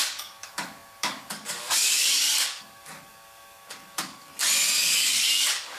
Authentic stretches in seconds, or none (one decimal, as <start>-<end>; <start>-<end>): 4.3-4.8